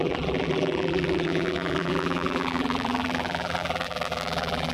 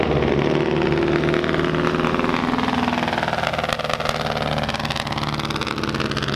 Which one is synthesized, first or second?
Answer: first